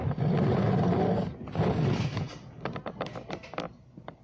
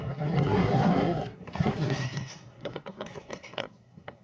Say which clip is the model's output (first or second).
second